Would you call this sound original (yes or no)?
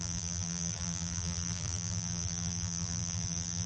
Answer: no